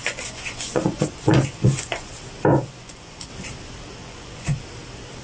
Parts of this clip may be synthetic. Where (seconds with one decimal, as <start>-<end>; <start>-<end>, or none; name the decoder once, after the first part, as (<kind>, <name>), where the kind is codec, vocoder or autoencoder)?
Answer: 0.0-2.1 (vocoder, Vocos); 2.5-3.3; 4.0-4.6